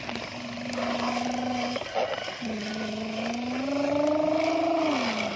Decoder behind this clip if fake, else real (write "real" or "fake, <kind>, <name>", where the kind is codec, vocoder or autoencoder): real